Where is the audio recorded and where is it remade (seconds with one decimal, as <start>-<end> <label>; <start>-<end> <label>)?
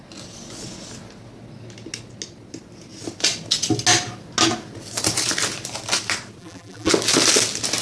0.0-6.4 recorded; 6.4-6.9 remade; 6.9-7.8 recorded